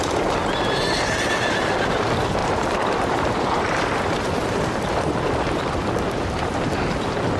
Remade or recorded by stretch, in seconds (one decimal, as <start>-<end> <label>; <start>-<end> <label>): 0.0-2.4 recorded; 2.4-3.6 remade; 3.6-7.4 recorded